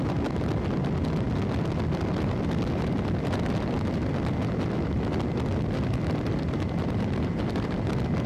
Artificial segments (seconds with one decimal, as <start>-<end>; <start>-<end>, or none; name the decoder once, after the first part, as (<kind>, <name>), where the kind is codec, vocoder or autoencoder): 6.0-7.8 (vocoder, BigVGAN v2)